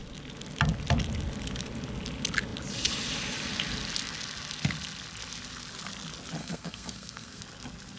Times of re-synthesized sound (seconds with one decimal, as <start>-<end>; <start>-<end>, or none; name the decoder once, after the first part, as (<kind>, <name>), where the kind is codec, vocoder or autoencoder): 6.4-7.4 (codec, SNAC)